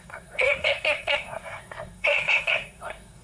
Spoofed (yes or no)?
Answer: yes